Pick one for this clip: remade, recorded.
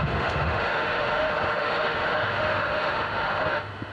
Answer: remade